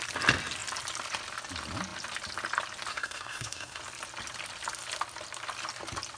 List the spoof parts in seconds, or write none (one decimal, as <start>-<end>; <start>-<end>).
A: 2.9-3.8